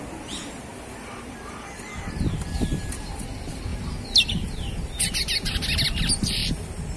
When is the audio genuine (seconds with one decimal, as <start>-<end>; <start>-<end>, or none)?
0.0-7.0